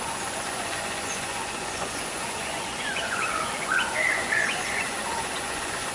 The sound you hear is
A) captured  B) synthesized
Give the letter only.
B